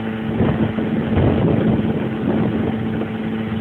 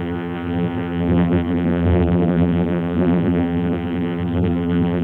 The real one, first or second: first